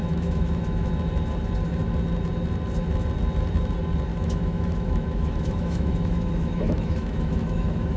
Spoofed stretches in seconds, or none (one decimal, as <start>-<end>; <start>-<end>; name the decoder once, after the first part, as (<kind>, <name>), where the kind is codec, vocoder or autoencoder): 0.0-0.9 (autoencoder, DAC-VAE); 4.1-8.0